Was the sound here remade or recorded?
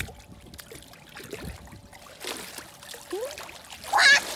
recorded